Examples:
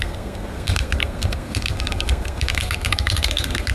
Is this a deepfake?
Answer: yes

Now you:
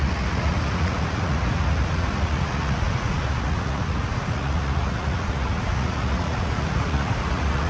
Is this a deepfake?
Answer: yes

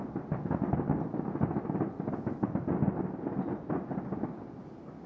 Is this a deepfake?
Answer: no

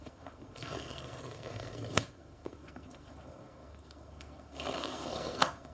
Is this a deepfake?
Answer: yes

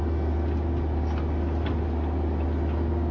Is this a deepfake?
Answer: no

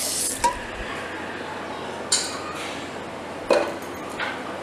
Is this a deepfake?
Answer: no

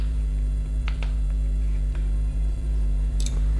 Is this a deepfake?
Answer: yes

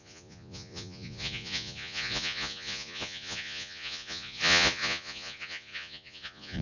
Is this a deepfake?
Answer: yes